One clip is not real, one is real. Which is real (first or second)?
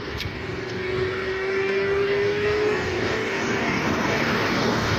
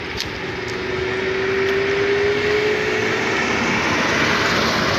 second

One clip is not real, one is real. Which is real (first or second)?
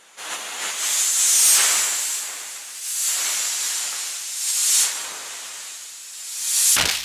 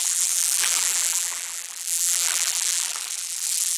first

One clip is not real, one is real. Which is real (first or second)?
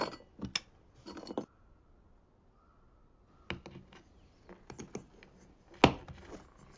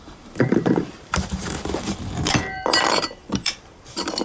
first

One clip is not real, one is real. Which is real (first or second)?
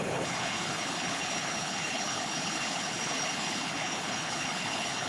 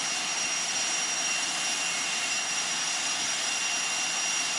second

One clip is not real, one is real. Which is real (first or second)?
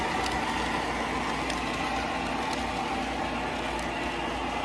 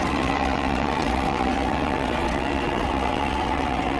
first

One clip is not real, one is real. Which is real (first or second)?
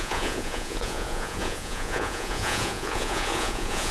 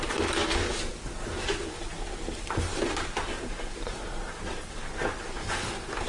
second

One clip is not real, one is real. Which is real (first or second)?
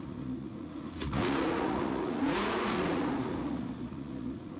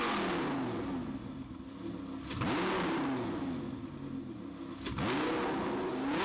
second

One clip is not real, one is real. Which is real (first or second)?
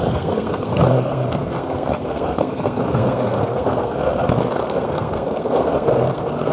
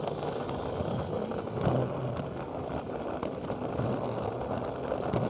second